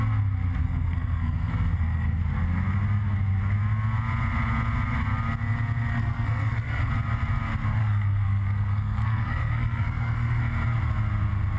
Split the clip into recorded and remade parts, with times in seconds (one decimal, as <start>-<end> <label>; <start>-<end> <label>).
0.0-0.6 recorded; 0.6-2.2 remade; 2.2-5.9 recorded; 5.9-6.9 remade; 6.9-7.8 recorded; 7.8-10.4 remade; 10.4-11.6 recorded